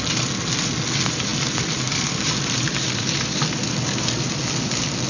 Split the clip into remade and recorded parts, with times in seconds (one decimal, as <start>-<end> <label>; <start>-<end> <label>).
0.0-1.3 recorded; 1.3-4.4 remade; 4.4-5.1 recorded